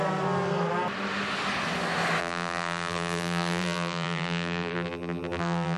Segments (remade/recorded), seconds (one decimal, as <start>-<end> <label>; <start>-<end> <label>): 0.0-2.2 recorded; 2.2-5.8 remade